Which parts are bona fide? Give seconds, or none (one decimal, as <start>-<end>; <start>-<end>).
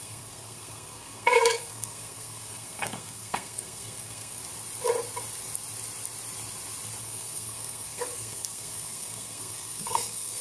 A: 4.4-7.0